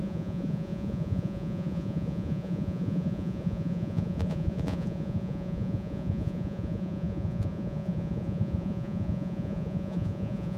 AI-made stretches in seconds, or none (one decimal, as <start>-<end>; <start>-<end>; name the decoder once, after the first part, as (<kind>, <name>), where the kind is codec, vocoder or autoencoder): 0.0-10.6 (vocoder, Vocos)